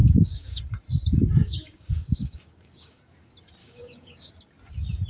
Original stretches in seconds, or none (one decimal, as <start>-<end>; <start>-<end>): 0.6-1.4; 3.0-3.6; 4.3-5.1